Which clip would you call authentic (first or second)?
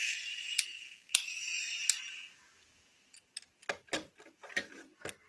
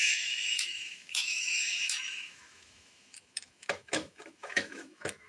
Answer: first